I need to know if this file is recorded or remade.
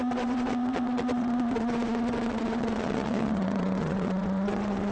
remade